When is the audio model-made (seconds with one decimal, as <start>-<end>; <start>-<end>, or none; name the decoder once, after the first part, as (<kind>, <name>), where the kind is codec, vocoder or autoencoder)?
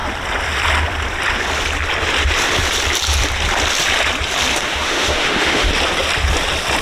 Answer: 4.5-5.7 (autoencoder, DAC-VAE)